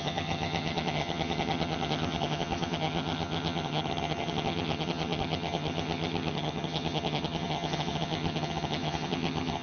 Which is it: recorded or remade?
remade